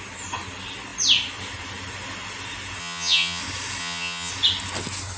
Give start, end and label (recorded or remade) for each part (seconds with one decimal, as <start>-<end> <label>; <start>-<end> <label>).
0.0-2.8 recorded; 2.8-3.4 remade; 3.4-3.8 recorded; 3.8-4.3 remade; 4.3-5.2 recorded